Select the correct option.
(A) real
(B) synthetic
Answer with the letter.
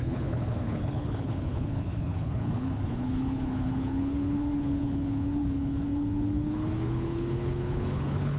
B